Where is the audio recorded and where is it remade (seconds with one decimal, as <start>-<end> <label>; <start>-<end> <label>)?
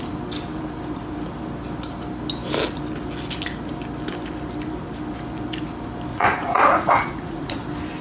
0.0-6.1 recorded; 6.1-7.6 remade; 7.6-8.0 recorded